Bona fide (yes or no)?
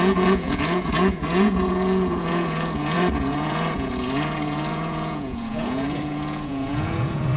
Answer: no